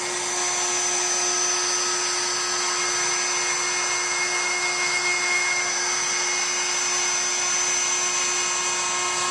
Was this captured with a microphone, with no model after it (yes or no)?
yes